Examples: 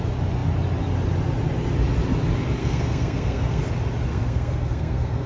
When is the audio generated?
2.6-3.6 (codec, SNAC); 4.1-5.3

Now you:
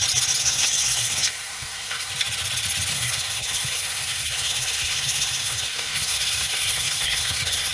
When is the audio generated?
0.4-2.1 (codec, SNAC); 2.9-7.7

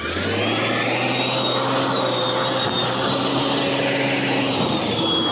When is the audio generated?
none

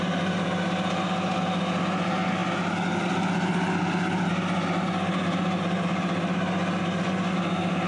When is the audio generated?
none

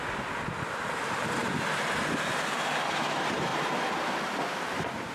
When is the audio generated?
none

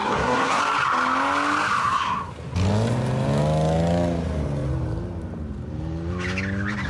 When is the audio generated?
0.0-0.6 (codec, SNAC); 1.8-2.3